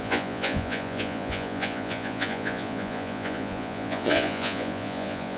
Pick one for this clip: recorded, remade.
remade